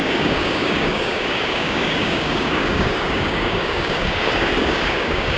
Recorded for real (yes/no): no